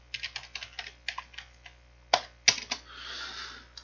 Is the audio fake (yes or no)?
no